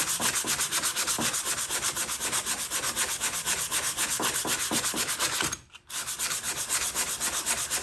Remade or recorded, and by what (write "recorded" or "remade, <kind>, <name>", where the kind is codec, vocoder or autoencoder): recorded